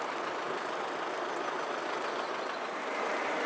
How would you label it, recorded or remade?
recorded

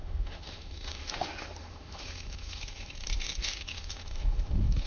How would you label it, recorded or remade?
remade